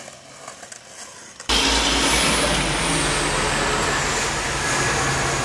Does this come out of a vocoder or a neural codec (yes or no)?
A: no